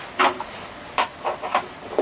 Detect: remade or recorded recorded